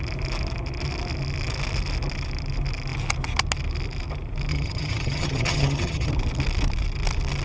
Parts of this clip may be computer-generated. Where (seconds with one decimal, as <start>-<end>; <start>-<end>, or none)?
4.5-6.1